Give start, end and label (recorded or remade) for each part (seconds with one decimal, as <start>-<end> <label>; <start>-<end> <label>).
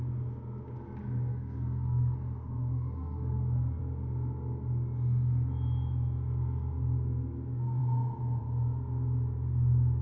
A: 0.0-1.3 recorded; 1.3-3.8 remade; 3.8-10.0 recorded